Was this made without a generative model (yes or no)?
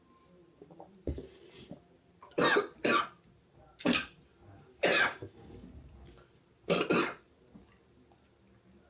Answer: yes